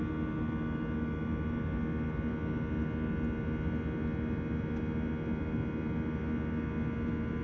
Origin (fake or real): real